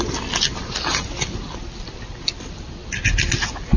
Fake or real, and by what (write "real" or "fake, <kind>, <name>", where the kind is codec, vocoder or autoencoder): real